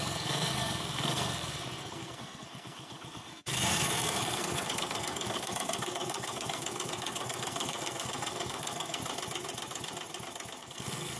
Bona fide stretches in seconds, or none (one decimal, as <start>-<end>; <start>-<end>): 9.0-10.6

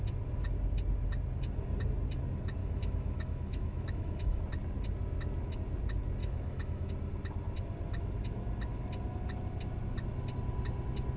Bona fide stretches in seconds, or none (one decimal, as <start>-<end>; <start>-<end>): 0.0-2.6; 4.4-6.2; 6.9-11.2

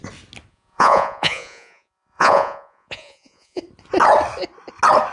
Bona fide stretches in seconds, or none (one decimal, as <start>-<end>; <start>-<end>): 0.0-0.5; 3.6-5.1

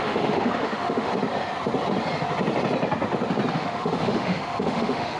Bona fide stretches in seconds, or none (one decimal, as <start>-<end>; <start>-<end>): 1.1-3.5

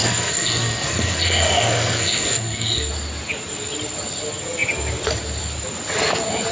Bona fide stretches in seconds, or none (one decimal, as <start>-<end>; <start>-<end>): 2.9-6.5

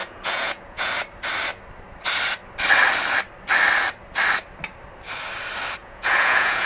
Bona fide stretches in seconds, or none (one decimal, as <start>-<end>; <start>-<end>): 0.9-5.8

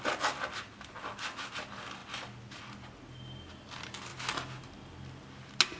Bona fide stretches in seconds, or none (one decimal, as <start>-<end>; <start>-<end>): 0.0-5.8